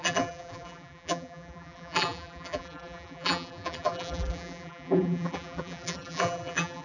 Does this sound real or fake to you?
fake